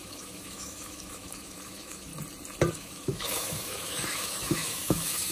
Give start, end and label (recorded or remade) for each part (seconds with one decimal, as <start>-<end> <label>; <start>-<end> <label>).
0.0-2.1 remade; 2.1-2.7 recorded; 2.7-5.3 remade